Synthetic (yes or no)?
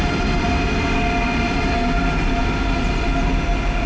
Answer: no